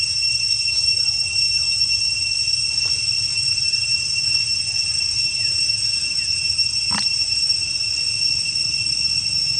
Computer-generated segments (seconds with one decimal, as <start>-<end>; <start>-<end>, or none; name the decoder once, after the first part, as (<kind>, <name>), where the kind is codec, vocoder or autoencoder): 0.0-2.3 (vocoder, BigVGAN v2); 3.3-7.7